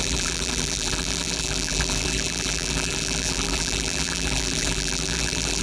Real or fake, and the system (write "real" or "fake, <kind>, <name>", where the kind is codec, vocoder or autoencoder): fake, vocoder, BigVGAN v2